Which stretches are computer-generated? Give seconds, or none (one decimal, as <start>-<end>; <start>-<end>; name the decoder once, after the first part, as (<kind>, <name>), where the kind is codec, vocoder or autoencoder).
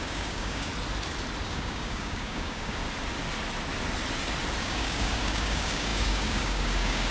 0.0-0.7 (codec, DAC); 1.5-2.8; 4.6-7.1